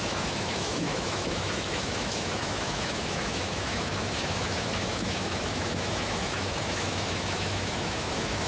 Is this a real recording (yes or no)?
no